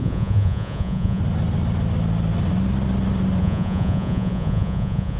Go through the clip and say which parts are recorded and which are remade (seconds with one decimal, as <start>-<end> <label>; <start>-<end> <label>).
0.0-1.2 remade; 1.2-3.4 recorded; 3.4-5.2 remade